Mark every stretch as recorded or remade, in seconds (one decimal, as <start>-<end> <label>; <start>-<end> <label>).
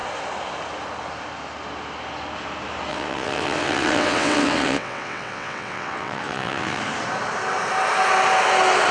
0.0-2.9 recorded; 2.9-6.8 remade; 6.8-8.9 recorded